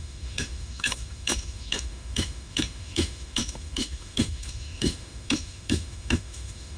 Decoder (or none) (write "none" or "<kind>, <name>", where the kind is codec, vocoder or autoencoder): autoencoder, DAC-VAE